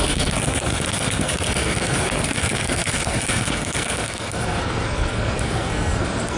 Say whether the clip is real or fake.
fake